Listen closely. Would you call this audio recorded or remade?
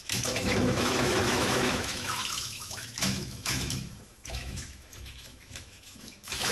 remade